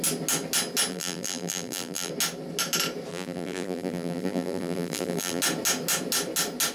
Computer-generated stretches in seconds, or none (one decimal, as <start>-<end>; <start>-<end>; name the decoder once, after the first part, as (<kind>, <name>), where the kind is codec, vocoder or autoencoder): 0.9-2.1 (vocoder, BigVGAN v2); 3.1-5.4